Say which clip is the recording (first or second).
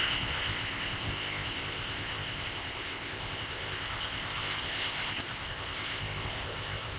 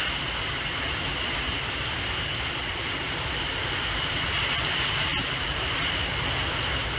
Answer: second